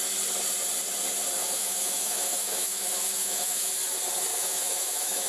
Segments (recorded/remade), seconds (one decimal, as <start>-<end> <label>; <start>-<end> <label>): 0.0-1.4 recorded; 1.4-3.7 remade; 3.7-4.3 recorded; 4.3-5.3 remade